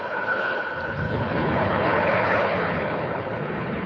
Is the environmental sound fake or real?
fake